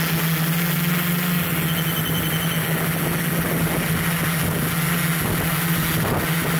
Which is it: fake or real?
real